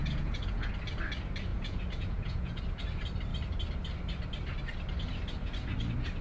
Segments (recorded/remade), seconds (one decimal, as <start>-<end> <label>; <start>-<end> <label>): 0.0-0.7 remade; 0.7-1.5 recorded; 1.5-2.6 remade; 2.6-6.2 recorded